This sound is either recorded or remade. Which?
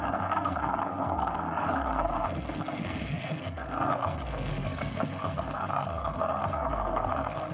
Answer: remade